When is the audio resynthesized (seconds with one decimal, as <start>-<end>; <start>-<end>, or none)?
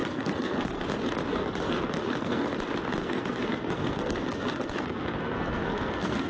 0.0-0.9; 1.3-2.5; 3.0-6.3